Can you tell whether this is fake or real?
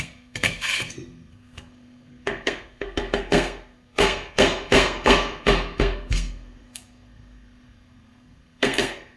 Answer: fake